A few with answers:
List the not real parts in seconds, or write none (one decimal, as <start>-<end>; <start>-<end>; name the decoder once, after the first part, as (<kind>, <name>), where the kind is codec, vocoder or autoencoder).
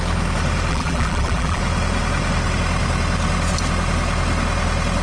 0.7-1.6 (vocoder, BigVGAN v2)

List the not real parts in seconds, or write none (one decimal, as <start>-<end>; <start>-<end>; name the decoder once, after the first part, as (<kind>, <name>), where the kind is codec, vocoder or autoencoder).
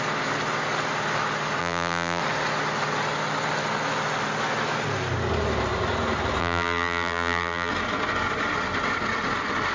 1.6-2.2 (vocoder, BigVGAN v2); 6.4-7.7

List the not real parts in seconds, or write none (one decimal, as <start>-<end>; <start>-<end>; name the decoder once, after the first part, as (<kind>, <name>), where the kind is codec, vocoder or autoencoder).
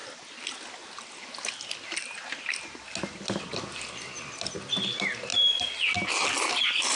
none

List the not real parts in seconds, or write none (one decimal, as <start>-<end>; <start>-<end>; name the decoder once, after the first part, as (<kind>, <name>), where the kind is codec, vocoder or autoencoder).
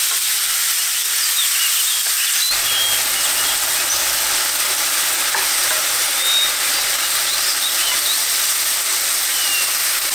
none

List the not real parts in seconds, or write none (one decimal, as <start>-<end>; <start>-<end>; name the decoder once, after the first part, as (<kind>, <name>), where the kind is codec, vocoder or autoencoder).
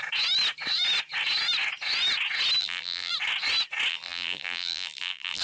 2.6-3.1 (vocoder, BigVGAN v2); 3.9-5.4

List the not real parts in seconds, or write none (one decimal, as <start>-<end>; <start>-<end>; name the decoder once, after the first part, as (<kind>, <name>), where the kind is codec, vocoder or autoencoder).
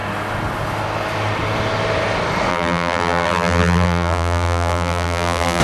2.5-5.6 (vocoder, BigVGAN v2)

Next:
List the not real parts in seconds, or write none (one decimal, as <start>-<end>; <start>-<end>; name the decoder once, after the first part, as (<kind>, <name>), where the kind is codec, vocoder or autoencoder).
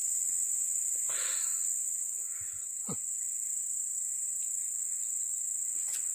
3.6-4.4 (vocoder, BigVGAN v2)